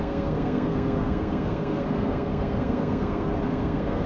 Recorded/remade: remade